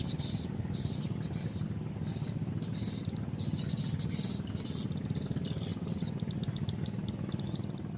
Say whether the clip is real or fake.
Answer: real